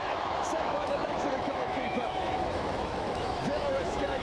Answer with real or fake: fake